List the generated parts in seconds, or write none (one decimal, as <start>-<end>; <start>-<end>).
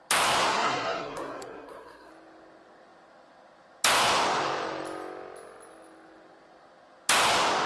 0.5-2.1